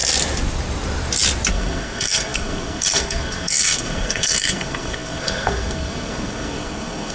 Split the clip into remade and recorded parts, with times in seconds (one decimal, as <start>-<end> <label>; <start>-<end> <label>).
0.0-1.5 recorded; 1.5-7.1 remade